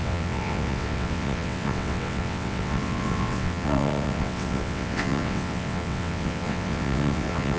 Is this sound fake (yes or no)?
yes